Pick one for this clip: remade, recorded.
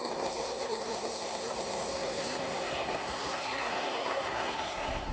remade